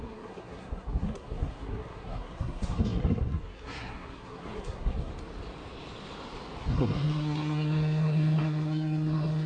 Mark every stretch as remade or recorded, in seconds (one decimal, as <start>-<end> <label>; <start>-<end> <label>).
0.0-5.1 remade; 5.1-6.6 recorded; 6.6-9.5 remade